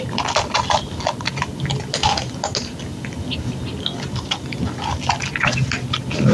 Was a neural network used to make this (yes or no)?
no